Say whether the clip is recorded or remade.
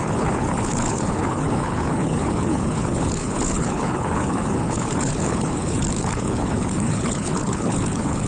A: remade